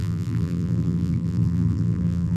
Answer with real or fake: fake